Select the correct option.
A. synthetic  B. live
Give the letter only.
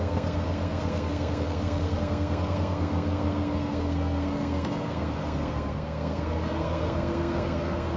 A